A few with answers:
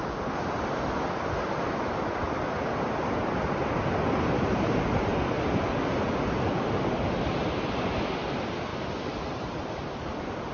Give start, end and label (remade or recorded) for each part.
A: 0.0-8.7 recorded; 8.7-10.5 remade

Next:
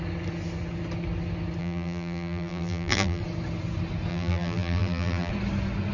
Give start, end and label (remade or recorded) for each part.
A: 0.0-1.6 recorded; 1.6-3.2 remade; 3.2-4.1 recorded; 4.1-5.3 remade; 5.3-5.9 recorded

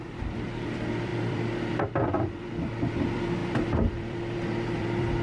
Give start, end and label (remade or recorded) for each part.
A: 0.0-5.2 remade

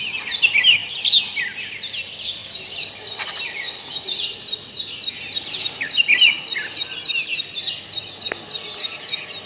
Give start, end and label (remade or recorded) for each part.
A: 0.0-2.4 recorded; 2.4-4.8 remade; 4.8-9.5 recorded

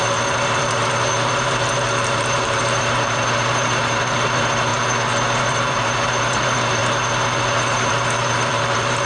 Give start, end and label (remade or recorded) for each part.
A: 0.0-4.7 remade; 4.7-5.4 recorded; 5.4-6.8 remade; 6.8-7.9 recorded; 7.9-9.1 remade

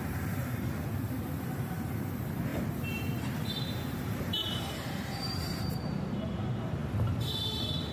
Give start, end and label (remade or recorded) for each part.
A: 0.0-6.8 remade; 6.8-7.9 recorded

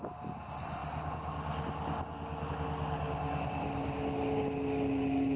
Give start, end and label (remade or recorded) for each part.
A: 0.0-5.4 recorded

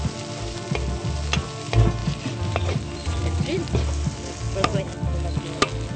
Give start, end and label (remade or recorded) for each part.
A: 0.0-2.0 recorded; 2.0-4.8 remade; 4.8-6.0 recorded